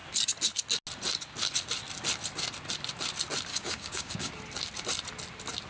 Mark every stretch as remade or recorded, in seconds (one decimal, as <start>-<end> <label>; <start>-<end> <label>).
0.0-3.5 recorded; 3.5-4.3 remade; 4.3-5.7 recorded